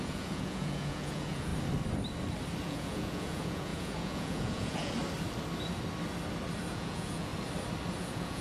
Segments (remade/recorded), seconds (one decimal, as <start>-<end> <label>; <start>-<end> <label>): 0.0-1.5 remade; 1.5-2.6 recorded; 2.6-5.0 remade; 5.0-6.7 recorded; 6.7-7.3 remade; 7.3-8.0 recorded; 8.0-8.4 remade